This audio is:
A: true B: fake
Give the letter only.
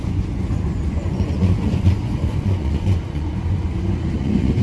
B